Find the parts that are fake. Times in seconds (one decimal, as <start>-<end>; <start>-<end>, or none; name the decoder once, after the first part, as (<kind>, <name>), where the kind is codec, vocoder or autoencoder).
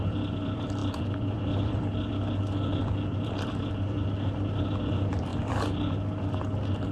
0.0-6.9 (vocoder, BigVGAN v2)